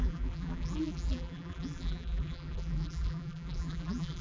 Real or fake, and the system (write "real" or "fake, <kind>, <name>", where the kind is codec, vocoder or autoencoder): fake, vocoder, BigVGAN v2